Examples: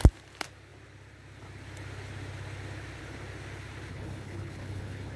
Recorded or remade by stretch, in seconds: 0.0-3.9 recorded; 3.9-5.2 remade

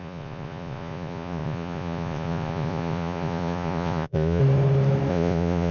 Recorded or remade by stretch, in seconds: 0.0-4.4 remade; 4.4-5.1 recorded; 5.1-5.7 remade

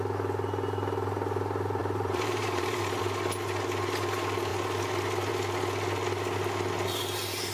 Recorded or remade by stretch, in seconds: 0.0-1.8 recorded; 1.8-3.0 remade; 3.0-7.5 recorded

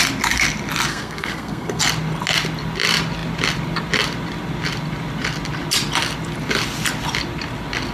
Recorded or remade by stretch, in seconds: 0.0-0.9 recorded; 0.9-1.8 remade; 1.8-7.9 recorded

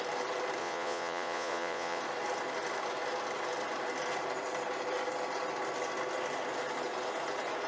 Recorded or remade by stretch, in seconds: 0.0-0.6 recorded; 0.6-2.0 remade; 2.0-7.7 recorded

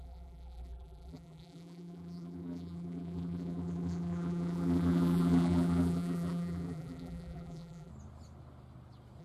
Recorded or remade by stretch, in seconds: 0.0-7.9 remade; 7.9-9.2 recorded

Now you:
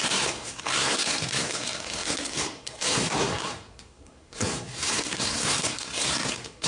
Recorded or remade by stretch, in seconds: 0.0-6.7 remade

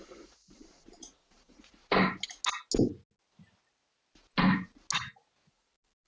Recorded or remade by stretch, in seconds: 0.0-1.8 remade; 1.8-5.5 recorded; 5.5-6.1 remade